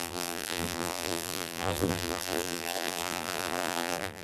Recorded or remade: remade